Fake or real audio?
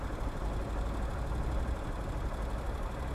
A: real